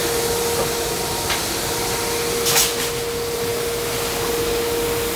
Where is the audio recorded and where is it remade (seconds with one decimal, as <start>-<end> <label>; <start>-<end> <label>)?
0.0-5.2 recorded